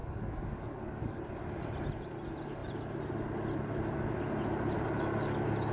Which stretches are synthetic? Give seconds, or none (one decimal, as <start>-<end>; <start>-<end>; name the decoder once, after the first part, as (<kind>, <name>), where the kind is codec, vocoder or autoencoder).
0.0-1.2 (codec, DAC)